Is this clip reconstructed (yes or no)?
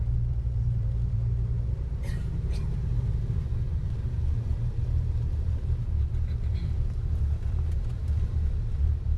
yes